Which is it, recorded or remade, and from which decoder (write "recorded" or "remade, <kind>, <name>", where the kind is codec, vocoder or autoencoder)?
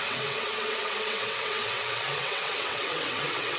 remade, vocoder, WaveNeXt